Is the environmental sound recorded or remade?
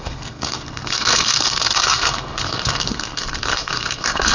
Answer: remade